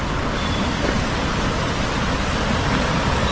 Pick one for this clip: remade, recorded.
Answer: recorded